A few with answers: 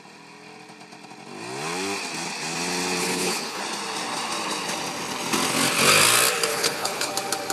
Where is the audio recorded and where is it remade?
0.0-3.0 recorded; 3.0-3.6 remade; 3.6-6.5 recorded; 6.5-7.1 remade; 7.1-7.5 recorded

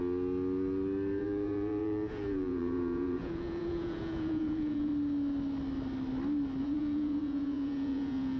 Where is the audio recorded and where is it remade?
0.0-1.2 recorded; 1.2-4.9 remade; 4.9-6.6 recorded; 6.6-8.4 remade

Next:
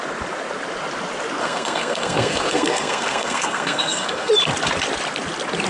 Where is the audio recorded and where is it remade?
0.0-1.4 recorded; 1.4-4.3 remade; 4.3-5.7 recorded

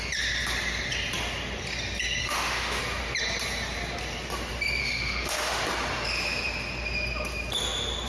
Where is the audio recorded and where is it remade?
0.0-2.2 recorded; 2.2-2.8 remade; 2.8-4.8 recorded; 4.8-5.6 remade; 5.6-8.1 recorded

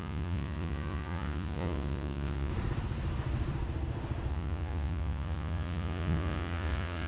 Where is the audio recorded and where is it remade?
0.0-2.5 remade; 2.5-4.3 recorded; 4.3-7.1 remade

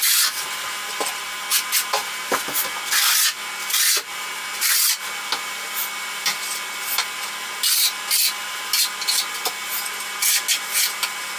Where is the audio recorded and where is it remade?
0.0-11.4 recorded

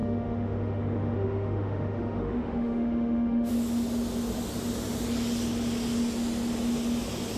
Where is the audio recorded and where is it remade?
0.0-3.5 remade; 3.5-7.4 recorded

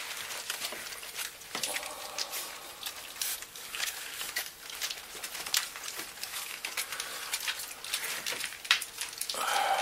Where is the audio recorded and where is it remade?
0.0-3.3 recorded; 3.3-4.6 remade; 4.6-6.3 recorded; 6.3-6.9 remade; 6.9-9.8 recorded